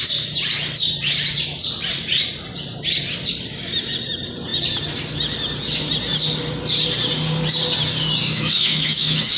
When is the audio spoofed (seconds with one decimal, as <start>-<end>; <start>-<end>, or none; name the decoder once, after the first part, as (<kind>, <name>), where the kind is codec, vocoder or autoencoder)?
8.2-9.4 (autoencoder, DAC-VAE)